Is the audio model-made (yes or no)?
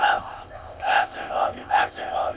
yes